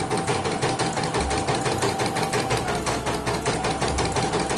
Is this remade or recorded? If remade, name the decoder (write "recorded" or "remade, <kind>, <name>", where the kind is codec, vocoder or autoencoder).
recorded